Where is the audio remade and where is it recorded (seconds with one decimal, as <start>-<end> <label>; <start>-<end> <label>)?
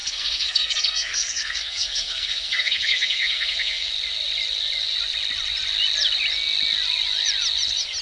0.0-3.9 remade; 3.9-8.0 recorded